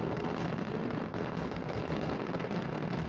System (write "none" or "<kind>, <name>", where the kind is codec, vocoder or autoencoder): codec, SNAC